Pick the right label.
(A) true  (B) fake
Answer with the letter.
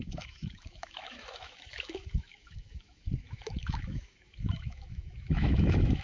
B